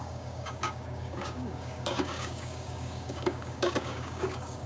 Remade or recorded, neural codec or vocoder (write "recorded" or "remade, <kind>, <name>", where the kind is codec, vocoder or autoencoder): remade, codec, DAC